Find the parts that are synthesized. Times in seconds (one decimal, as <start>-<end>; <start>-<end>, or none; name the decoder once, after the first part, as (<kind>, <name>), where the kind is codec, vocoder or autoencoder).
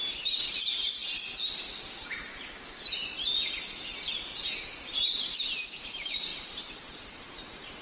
0.0-1.0 (vocoder, BigVGAN v2); 4.2-7.8